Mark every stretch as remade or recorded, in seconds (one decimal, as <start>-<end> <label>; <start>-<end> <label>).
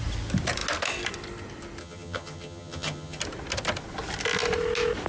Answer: 0.0-1.8 recorded; 1.8-3.2 remade; 3.2-5.1 recorded